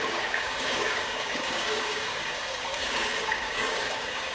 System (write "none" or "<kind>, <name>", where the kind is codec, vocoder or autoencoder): codec, DAC